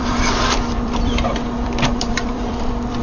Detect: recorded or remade remade